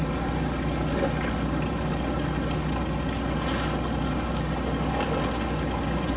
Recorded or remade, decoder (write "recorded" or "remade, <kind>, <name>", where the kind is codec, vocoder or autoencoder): recorded